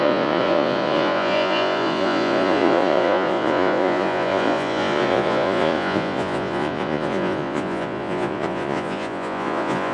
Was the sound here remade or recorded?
remade